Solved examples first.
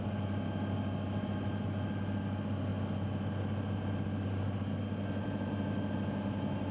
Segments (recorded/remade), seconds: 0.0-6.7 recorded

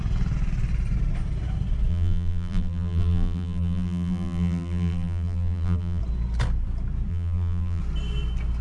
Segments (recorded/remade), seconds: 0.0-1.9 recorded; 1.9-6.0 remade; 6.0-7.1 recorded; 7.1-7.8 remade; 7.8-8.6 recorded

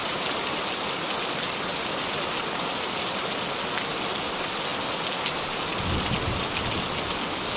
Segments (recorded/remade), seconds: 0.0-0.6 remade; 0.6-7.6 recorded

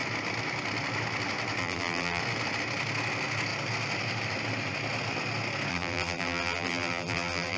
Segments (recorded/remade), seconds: 0.0-1.6 recorded; 1.6-2.2 remade; 2.2-5.7 recorded; 5.7-7.6 remade

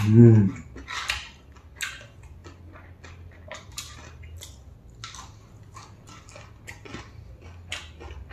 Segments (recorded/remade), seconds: 0.0-2.4 recorded; 2.4-3.9 remade; 3.9-8.3 recorded

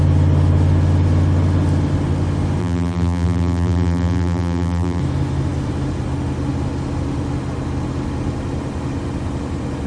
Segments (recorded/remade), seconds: 0.0-2.6 recorded; 2.6-5.0 remade; 5.0-9.9 recorded